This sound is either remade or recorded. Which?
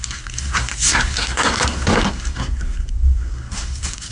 remade